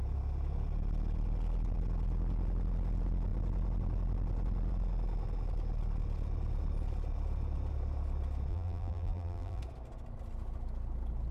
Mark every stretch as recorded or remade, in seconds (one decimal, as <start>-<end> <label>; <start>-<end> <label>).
0.0-8.5 recorded; 8.5-9.6 remade; 9.6-11.3 recorded